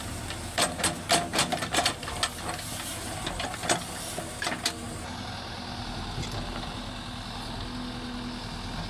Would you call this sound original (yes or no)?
yes